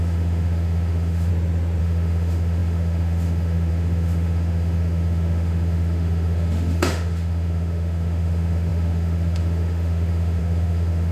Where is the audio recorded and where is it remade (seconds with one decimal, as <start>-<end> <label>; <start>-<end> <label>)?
0.0-1.3 remade; 1.3-1.8 recorded; 1.8-11.1 remade